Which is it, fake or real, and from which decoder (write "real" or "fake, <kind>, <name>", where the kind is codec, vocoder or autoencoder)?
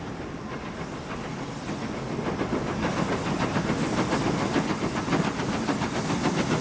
real